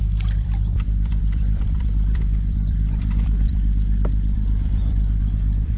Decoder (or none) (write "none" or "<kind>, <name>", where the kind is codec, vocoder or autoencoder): vocoder, BigVGAN v2